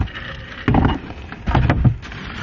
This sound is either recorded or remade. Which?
recorded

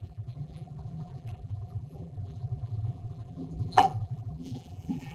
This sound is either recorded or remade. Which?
remade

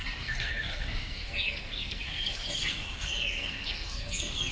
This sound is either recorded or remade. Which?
remade